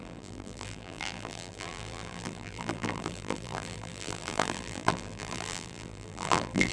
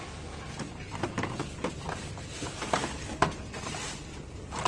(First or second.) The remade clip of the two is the first